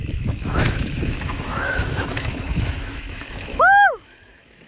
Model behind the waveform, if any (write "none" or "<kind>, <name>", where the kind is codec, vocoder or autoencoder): autoencoder, DAC-VAE